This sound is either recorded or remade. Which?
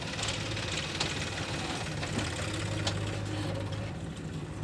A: recorded